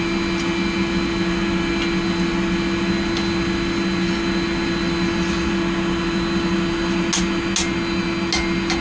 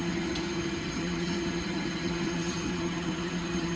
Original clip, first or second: first